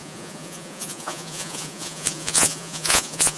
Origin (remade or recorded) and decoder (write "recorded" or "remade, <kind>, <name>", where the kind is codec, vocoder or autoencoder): remade, vocoder, Vocos